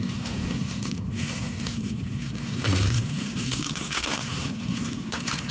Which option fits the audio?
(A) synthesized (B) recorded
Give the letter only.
A